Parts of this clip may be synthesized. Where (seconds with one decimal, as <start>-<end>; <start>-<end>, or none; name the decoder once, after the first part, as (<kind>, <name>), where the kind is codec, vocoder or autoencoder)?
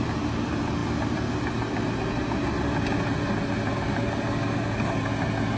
none